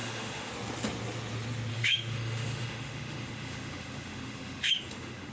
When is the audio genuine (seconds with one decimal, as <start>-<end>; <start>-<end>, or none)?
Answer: 0.5-1.7